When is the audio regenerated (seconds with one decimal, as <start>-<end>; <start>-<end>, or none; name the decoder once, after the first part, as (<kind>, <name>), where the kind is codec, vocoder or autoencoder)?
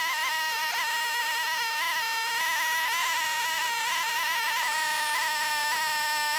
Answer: 3.0-5.5 (vocoder, Vocos)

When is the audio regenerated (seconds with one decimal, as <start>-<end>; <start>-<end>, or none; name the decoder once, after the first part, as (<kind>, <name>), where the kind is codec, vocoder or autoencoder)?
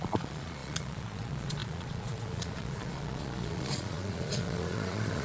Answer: 0.0-5.2 (vocoder, Vocos)